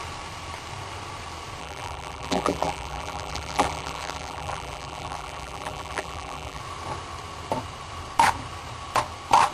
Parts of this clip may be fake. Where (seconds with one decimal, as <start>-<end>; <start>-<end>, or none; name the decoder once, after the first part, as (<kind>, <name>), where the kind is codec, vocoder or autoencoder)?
1.6-6.6 (vocoder, BigVGAN v2)